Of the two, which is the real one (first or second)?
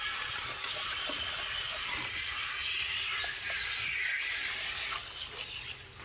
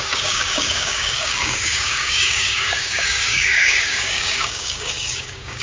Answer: first